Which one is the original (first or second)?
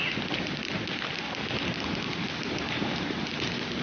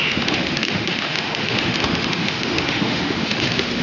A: first